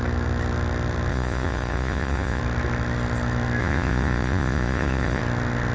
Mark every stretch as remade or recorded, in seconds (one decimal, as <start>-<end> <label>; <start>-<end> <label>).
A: 0.0-1.1 recorded; 1.1-2.4 remade; 2.4-3.6 recorded; 3.6-5.2 remade; 5.2-5.7 recorded